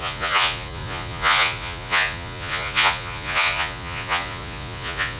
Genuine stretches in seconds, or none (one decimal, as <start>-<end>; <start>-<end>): none